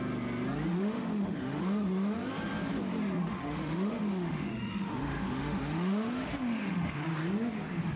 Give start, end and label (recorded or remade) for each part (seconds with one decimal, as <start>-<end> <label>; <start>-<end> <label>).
0.0-0.7 recorded; 0.7-1.6 remade; 1.6-3.3 recorded; 3.3-7.1 remade; 7.1-8.0 recorded